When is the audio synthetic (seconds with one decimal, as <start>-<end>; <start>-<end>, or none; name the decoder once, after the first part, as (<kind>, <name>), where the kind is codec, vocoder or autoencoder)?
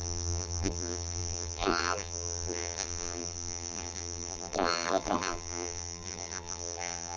0.0-7.2 (vocoder, BigVGAN v2)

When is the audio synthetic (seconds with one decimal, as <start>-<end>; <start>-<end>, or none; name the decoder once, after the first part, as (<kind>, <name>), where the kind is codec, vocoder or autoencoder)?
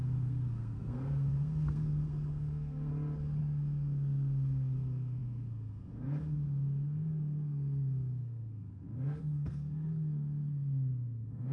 0.0-2.9 (codec, SNAC); 3.4-11.5